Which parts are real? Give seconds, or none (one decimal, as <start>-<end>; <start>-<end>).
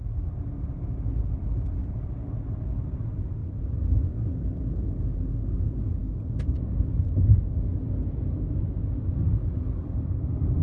0.0-10.6